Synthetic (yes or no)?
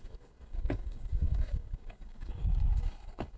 yes